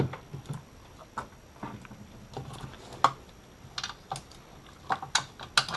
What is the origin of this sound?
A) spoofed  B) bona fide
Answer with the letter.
B